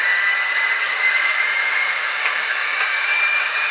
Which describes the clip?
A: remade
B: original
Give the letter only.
A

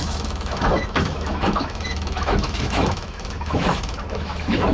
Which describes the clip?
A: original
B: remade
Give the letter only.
B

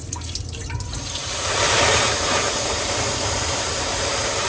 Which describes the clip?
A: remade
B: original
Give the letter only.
A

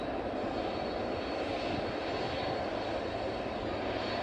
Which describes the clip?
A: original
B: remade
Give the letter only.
A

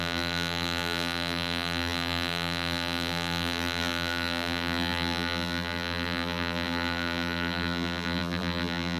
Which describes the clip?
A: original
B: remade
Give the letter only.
B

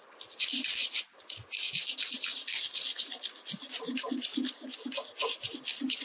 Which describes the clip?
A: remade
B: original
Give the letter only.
B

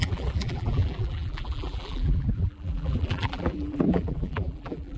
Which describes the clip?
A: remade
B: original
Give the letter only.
A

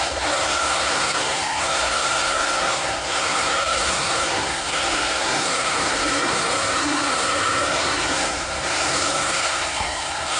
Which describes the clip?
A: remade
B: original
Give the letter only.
A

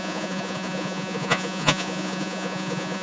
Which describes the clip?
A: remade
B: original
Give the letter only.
A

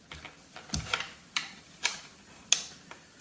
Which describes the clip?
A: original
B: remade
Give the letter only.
A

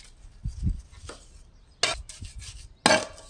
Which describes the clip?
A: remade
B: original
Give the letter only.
B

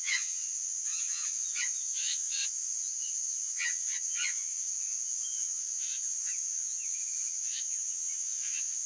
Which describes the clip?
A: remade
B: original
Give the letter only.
A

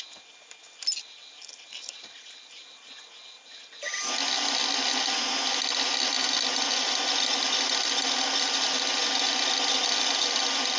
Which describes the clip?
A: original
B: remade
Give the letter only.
A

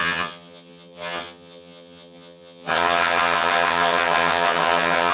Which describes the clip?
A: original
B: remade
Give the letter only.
B